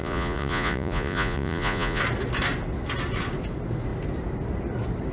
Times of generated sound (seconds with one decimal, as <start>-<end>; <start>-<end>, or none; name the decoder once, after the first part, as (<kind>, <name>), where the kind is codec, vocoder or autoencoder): 0.0-2.0 (vocoder, Vocos)